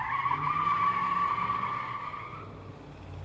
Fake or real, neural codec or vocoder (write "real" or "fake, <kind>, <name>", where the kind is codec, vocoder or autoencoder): real